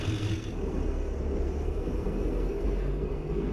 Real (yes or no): no